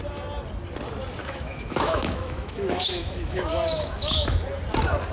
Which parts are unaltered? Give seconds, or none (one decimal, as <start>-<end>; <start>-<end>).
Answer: 0.0-1.2; 4.3-5.1